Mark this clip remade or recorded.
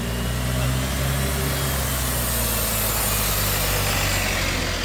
recorded